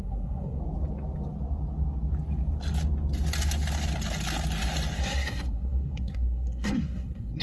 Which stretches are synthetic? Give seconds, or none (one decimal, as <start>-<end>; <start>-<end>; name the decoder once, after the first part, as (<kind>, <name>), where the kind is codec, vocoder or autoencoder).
0.0-0.6 (codec, SNAC); 5.0-7.4